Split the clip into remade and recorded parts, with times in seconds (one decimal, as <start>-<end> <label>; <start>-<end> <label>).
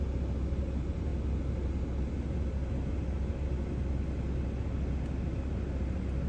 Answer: 0.0-6.3 recorded